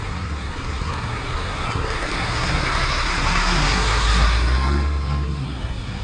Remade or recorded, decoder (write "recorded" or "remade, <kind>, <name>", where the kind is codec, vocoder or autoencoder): remade, codec, SNAC